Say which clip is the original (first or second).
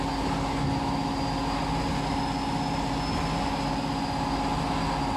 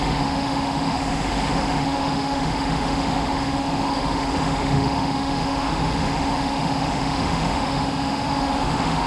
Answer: first